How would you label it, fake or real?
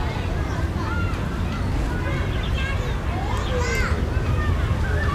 real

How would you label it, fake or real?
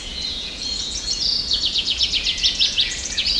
fake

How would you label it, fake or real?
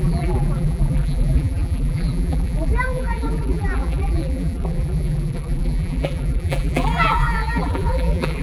fake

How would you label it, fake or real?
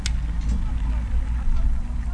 real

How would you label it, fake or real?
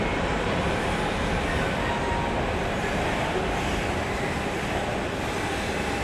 real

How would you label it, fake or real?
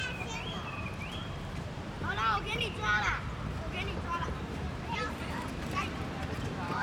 fake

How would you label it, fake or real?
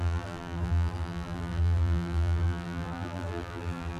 fake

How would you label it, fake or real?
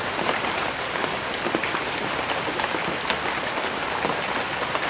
real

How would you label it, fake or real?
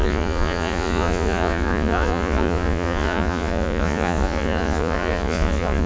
fake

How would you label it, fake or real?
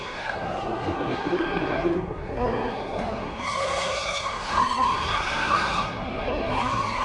fake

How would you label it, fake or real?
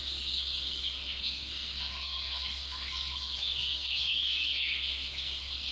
fake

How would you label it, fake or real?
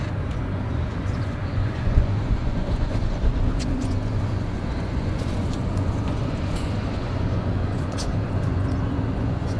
fake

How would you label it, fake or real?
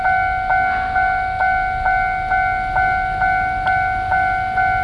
real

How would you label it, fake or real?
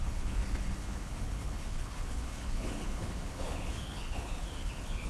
fake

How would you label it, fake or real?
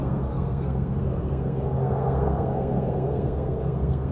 fake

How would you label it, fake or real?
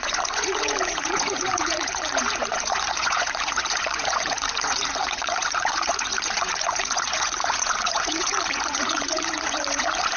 fake